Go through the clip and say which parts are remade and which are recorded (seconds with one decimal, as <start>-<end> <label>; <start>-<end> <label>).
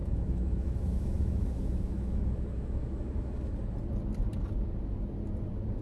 0.0-3.5 remade; 3.5-5.8 recorded